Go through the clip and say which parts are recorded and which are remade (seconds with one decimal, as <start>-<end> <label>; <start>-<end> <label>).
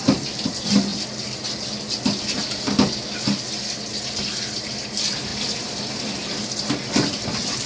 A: 0.0-7.7 recorded